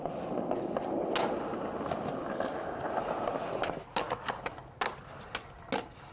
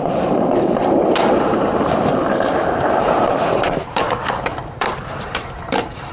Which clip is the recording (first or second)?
first